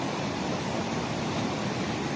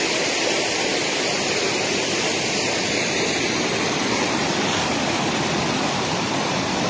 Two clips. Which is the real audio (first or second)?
second